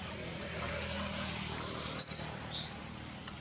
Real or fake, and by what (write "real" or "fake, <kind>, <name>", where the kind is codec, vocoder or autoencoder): real